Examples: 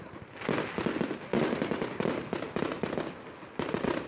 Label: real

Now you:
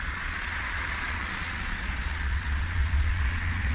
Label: fake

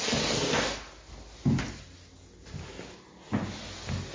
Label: real